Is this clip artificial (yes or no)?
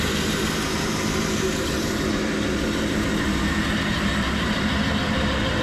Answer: yes